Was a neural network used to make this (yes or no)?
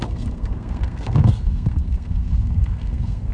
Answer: yes